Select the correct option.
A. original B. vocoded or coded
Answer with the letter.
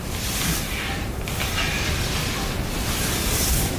A